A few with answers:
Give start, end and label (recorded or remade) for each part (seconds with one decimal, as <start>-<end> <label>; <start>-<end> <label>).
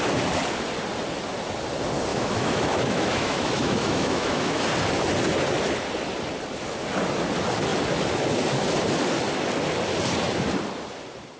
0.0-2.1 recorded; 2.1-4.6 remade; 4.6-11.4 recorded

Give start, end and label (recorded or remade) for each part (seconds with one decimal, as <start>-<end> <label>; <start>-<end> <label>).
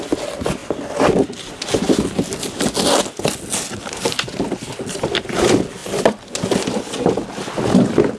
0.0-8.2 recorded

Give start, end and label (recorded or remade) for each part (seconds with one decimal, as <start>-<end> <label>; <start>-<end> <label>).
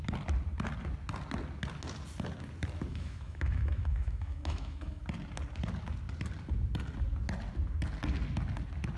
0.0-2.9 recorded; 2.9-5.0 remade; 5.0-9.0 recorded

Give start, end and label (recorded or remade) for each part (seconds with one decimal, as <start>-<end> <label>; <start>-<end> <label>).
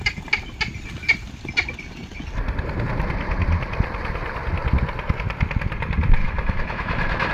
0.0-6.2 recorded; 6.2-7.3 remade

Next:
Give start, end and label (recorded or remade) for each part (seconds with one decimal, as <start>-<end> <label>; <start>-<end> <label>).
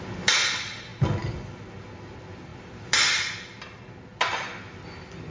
0.0-5.3 recorded